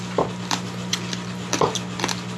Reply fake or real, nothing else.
real